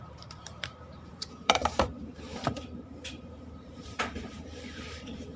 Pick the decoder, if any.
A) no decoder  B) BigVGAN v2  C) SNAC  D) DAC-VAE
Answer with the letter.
B